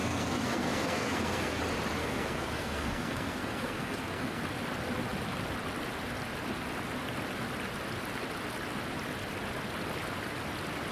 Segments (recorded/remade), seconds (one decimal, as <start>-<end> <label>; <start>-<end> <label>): 0.0-1.6 remade; 1.6-2.0 recorded; 2.0-4.4 remade; 4.4-10.9 recorded